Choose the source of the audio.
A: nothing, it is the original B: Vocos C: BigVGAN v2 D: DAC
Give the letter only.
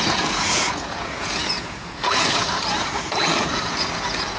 B